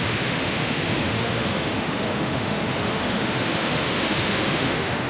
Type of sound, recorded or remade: remade